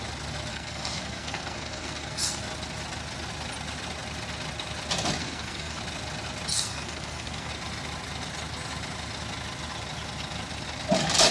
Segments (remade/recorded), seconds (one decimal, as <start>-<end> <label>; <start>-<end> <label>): 0.0-0.5 recorded; 0.5-2.4 remade; 2.4-5.2 recorded; 5.2-5.8 remade; 5.8-6.5 recorded; 6.5-7.5 remade; 7.5-11.3 recorded